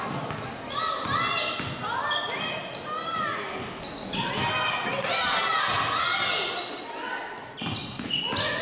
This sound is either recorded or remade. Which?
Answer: recorded